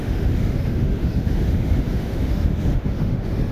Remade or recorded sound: remade